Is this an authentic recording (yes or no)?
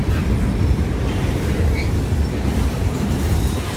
no